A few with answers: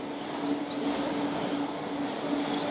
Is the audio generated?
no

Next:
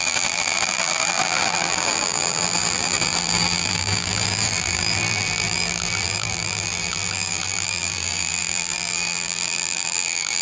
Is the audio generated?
yes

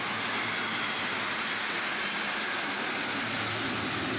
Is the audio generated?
no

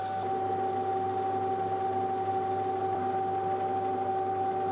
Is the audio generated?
no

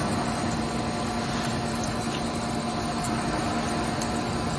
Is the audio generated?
no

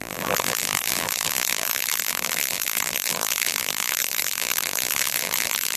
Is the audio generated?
yes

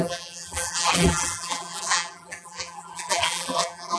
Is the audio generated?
yes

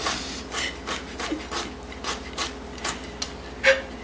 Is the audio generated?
no